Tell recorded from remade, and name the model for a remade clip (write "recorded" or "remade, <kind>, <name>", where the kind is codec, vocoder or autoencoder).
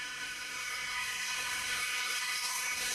remade, codec, SNAC